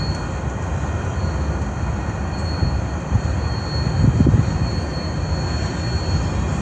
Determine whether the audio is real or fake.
real